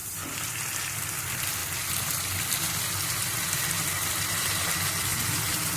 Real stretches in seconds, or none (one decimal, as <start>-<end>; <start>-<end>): 0.8-1.6; 4.5-5.8